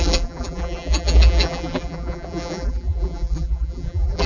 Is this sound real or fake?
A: fake